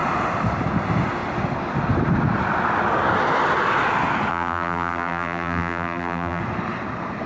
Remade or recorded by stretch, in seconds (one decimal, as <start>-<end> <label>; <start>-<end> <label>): 0.0-4.3 recorded; 4.3-6.4 remade; 6.4-7.3 recorded